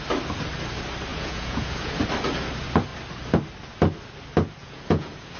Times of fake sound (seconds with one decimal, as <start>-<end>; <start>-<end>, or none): 1.1-2.0; 4.6-5.4